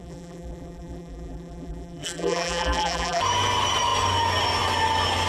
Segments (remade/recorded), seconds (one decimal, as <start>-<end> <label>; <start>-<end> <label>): 0.0-3.2 remade; 3.2-5.3 recorded